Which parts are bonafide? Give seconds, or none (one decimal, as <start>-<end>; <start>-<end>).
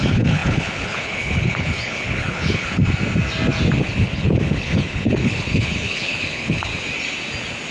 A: 2.8-3.8; 6.7-7.7